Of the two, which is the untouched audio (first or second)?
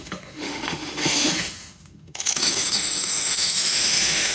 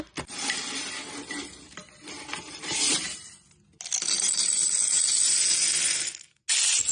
second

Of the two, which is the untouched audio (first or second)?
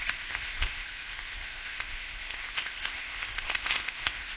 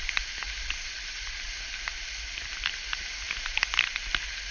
second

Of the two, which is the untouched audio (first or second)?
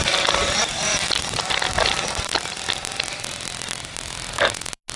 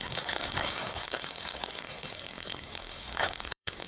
first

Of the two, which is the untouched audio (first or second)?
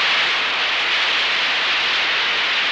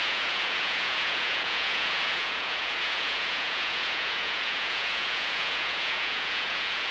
first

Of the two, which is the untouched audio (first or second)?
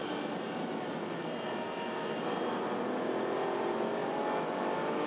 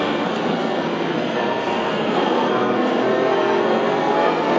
first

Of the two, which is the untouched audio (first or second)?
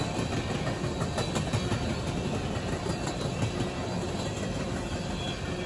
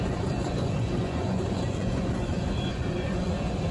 first